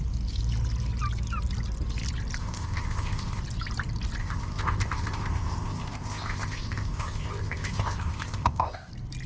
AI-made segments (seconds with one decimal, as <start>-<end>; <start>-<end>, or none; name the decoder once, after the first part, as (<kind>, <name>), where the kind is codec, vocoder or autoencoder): 2.4-3.4 (codec, ZipCodec); 4.2-8.9